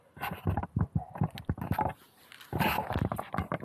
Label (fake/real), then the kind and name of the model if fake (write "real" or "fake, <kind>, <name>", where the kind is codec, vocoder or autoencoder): real